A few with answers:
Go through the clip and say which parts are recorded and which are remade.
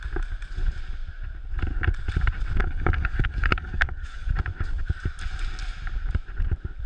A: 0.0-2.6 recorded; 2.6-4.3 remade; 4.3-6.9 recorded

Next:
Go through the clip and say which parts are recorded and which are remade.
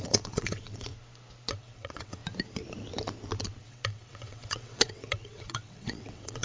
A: 0.0-0.9 remade; 0.9-1.6 recorded; 1.6-2.2 remade; 2.2-3.6 recorded; 3.6-6.4 remade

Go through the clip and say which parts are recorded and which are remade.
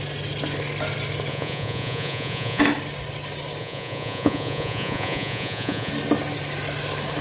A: 0.0-1.3 recorded; 1.3-2.6 remade; 2.6-3.6 recorded; 3.6-5.9 remade; 5.9-7.2 recorded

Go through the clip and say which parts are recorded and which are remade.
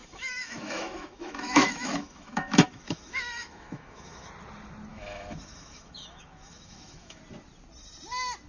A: 0.0-4.3 remade; 4.3-4.9 recorded; 4.9-7.2 remade; 7.2-8.5 recorded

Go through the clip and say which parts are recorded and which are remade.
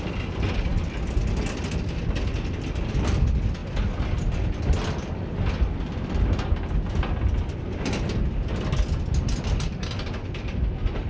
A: 0.0-11.1 recorded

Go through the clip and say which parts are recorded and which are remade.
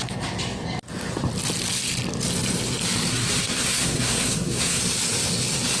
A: 0.0-3.1 recorded; 3.1-4.8 remade; 4.8-5.8 recorded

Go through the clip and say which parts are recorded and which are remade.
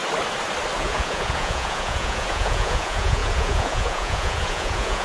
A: 0.0-0.8 recorded; 0.8-5.0 remade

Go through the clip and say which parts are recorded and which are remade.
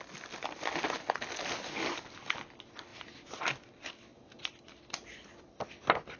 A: 0.0-6.2 recorded